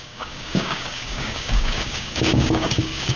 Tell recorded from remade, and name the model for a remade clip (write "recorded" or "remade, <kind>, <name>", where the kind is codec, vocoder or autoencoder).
remade, codec, DAC